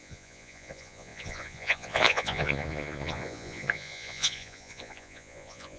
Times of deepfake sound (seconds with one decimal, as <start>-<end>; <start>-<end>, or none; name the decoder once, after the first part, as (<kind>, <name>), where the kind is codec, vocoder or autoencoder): 0.0-5.8 (vocoder, Vocos)